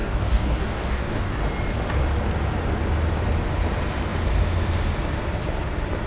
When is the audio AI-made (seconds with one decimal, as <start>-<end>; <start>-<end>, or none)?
0.0-1.4